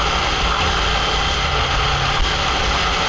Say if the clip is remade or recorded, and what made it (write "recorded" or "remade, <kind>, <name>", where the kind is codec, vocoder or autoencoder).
recorded